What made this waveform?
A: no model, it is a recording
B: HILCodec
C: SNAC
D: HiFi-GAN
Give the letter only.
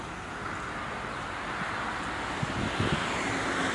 A